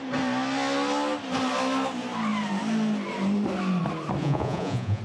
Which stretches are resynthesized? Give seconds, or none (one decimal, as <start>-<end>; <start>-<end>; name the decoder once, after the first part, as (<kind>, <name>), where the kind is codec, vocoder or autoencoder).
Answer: 4.2-5.0 (vocoder, Vocos)